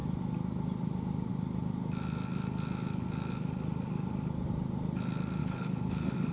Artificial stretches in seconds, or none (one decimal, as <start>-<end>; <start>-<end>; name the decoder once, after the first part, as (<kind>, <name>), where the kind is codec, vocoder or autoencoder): 5.4-6.3 (codec, HILCodec)